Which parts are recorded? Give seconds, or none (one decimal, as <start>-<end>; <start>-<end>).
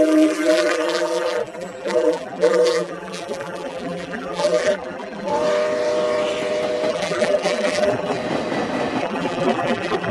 5.3-6.9; 8.2-9.0